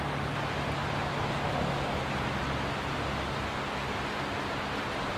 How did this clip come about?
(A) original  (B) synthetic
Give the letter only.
A